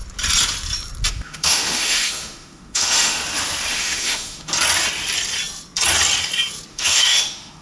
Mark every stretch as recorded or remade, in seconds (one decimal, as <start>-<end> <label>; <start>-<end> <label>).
0.0-1.1 recorded; 1.1-3.2 remade; 3.2-3.7 recorded; 3.7-4.5 remade; 4.5-6.7 recorded; 6.7-7.6 remade